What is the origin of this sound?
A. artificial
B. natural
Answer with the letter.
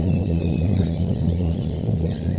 A